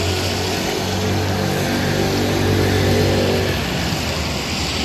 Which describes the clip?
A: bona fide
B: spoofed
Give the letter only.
A